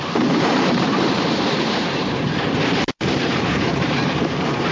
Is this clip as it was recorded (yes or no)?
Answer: no